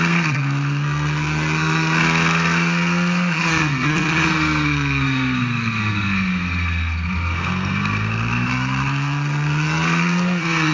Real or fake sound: fake